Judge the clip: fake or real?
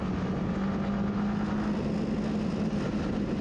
real